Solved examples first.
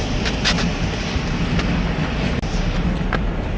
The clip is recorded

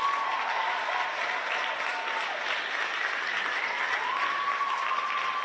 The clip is remade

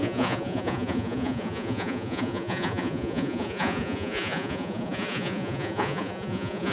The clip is remade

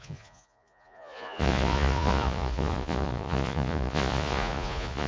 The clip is remade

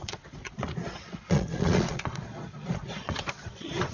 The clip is remade